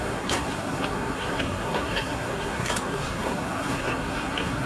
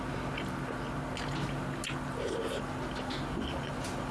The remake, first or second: first